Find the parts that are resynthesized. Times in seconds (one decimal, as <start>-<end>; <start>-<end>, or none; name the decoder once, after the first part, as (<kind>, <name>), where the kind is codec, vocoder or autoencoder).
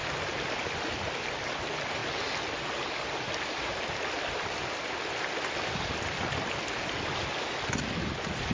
none